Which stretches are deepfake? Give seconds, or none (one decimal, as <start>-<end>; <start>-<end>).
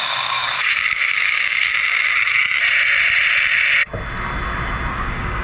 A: 0.0-1.7; 4.9-5.4